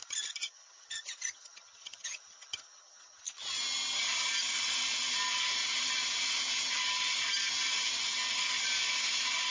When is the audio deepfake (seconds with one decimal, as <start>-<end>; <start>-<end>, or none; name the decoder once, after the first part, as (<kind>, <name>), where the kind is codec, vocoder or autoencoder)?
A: 0.4-3.2 (vocoder, HiFi-GAN)

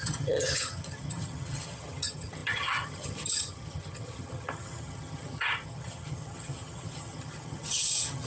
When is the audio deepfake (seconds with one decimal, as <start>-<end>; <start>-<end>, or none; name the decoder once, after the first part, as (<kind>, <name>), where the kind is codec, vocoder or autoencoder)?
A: 0.0-8.3 (vocoder, HiFi-GAN)